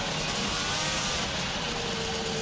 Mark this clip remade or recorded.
recorded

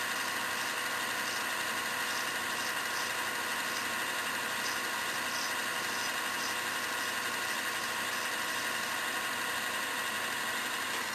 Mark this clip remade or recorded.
recorded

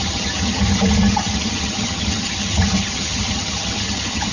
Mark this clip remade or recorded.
remade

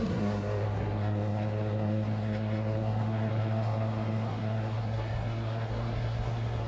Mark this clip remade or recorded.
remade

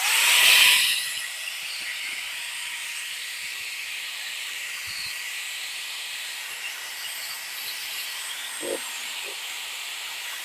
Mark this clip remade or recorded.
remade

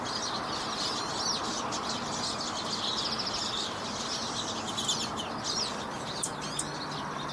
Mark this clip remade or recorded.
recorded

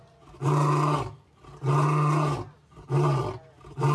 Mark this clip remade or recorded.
recorded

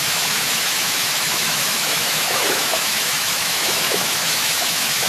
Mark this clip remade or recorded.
remade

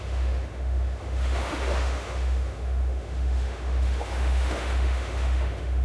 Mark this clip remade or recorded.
remade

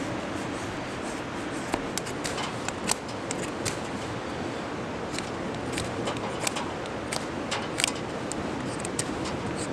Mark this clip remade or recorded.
recorded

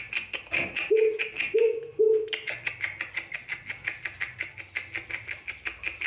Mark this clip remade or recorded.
recorded